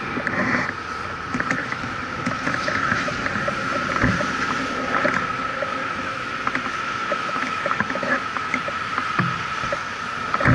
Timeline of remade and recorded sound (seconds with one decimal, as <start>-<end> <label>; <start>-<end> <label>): 0.0-1.6 recorded; 1.6-3.1 remade; 3.1-5.7 recorded; 5.7-6.3 remade; 6.3-7.0 recorded; 7.0-8.7 remade; 8.7-10.5 recorded